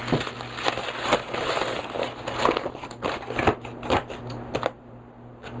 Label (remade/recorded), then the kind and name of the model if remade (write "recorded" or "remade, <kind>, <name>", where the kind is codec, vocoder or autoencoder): recorded